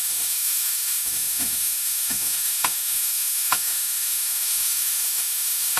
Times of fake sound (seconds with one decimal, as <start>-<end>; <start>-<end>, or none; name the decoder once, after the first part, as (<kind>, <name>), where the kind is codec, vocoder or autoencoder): 0.0-5.8 (autoencoder, DAC-VAE)